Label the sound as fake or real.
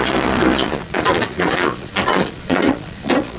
fake